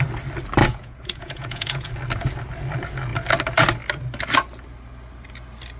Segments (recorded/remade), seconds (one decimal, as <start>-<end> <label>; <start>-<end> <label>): 0.0-0.6 recorded; 0.6-1.9 remade; 1.9-5.8 recorded